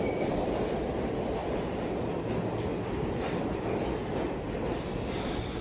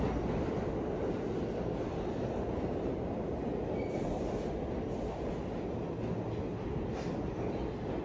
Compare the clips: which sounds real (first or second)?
second